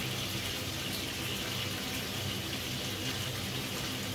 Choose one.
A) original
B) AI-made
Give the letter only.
A